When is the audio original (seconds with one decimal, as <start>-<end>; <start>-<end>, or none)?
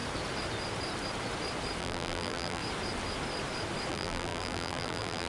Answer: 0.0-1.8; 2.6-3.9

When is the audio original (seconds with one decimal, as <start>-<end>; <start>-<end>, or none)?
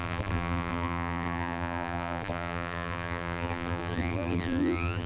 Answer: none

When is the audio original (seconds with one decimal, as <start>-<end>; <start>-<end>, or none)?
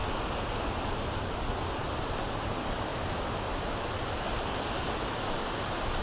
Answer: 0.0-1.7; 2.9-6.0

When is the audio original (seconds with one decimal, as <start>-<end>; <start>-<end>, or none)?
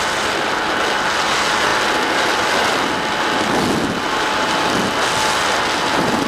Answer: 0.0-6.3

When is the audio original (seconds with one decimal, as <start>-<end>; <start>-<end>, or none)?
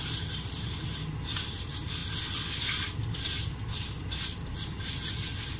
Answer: 2.0-5.6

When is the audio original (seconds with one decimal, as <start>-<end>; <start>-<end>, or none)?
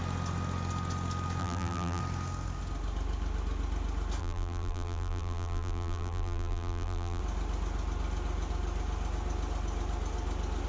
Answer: 0.0-1.4; 2.0-4.2; 7.2-10.7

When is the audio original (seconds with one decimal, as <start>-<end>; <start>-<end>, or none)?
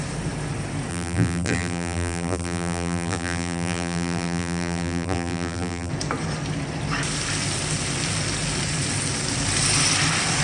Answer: 0.0-0.9; 5.9-10.4